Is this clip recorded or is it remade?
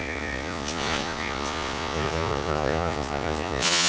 remade